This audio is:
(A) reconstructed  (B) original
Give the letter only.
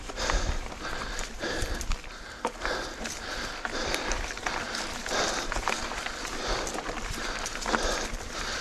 A